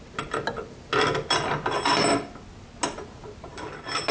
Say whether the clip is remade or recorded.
recorded